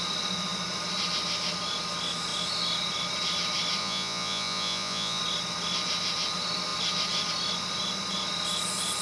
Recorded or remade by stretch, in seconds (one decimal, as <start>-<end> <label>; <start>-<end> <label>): 0.0-3.8 recorded; 3.8-5.2 remade; 5.2-9.0 recorded